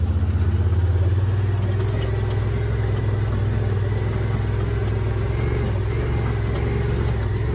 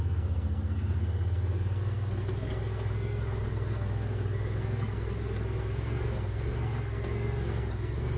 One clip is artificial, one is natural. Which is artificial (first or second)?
second